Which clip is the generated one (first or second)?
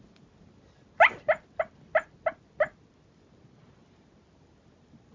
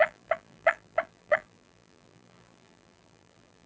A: second